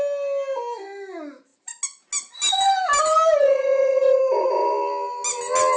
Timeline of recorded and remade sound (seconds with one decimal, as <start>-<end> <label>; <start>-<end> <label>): 0.0-3.4 recorded; 3.4-4.2 remade; 4.2-5.8 recorded